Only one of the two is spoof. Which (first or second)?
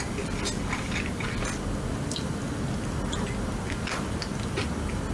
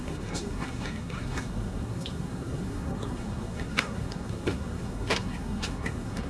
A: second